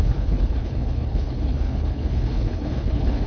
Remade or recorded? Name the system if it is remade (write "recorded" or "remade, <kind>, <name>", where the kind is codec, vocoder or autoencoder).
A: remade, codec, HILCodec